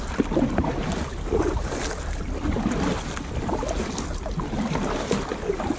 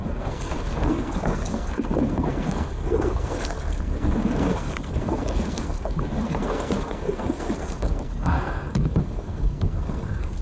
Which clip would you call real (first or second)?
first